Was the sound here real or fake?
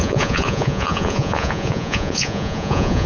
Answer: fake